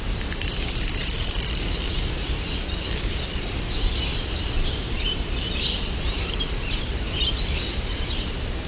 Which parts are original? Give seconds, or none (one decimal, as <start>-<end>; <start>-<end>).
0.0-1.0; 1.6-4.1; 7.0-8.7